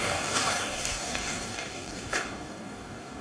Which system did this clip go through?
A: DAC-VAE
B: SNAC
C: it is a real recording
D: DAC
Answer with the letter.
D